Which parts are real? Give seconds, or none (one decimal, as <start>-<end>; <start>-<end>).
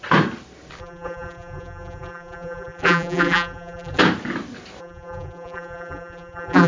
0.0-0.8; 4.0-4.8